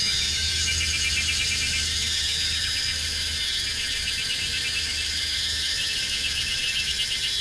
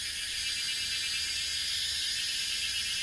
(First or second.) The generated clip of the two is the first